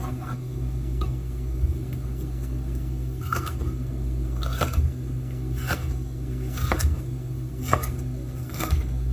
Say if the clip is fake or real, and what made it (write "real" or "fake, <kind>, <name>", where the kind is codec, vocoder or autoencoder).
fake, codec, SNAC